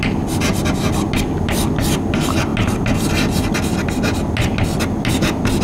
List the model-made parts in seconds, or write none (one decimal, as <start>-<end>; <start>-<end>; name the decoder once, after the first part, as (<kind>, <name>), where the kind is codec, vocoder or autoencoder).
none